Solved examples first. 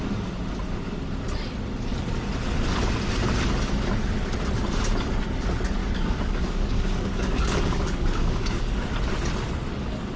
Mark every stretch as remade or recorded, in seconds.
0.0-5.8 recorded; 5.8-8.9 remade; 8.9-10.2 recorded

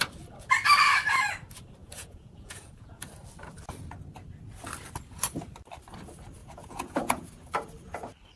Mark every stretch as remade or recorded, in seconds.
0.0-1.8 recorded; 1.8-3.0 remade; 3.0-6.4 recorded; 6.4-7.3 remade; 7.3-8.4 recorded